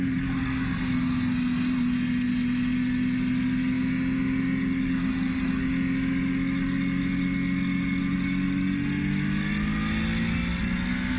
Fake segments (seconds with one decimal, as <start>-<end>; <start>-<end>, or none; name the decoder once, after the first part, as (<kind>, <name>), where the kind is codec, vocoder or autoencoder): none